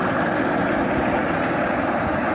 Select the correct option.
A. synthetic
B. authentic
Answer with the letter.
B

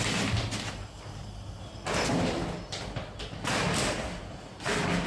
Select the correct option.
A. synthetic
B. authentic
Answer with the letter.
B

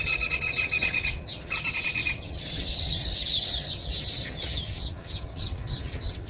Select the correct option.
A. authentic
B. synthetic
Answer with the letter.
B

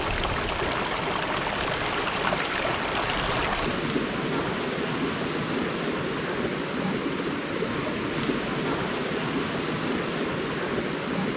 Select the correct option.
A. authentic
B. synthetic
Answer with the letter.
A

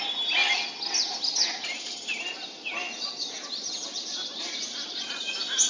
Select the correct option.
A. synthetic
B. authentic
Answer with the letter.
B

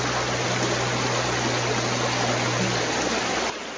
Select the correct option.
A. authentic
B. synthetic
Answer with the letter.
A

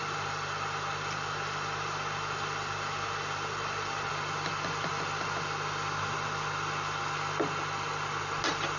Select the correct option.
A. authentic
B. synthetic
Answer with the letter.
A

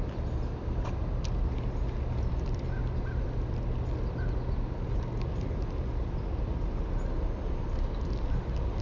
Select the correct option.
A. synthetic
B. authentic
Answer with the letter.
B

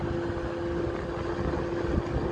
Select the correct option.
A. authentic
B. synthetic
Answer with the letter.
A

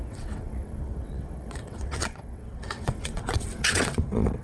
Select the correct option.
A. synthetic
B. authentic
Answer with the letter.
A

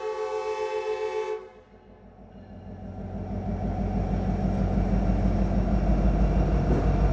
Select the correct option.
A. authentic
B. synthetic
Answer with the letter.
A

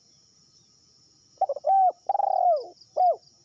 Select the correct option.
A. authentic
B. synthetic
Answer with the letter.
A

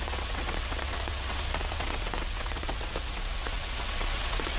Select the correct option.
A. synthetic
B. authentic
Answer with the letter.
A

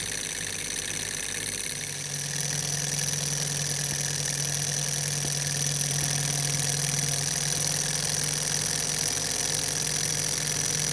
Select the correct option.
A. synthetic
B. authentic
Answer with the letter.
B